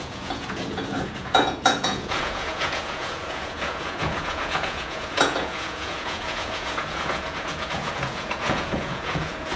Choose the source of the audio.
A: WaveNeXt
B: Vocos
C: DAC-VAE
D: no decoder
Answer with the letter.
B